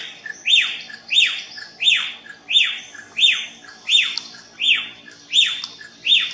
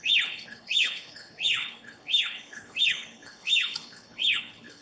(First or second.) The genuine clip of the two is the first